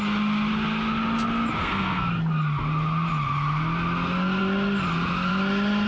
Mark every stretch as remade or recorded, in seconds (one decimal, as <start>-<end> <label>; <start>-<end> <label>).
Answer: 0.0-1.6 recorded; 1.6-2.1 remade; 2.1-5.9 recorded